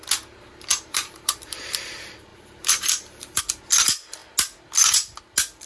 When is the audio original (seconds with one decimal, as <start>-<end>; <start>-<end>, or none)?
0.0-0.5; 1.9-2.3; 3.4-5.7